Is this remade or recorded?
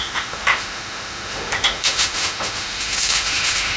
remade